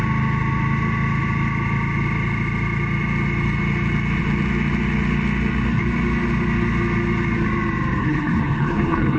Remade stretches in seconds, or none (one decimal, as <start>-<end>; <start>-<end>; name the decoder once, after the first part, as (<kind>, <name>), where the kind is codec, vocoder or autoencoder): 8.0-9.2 (codec, HILCodec)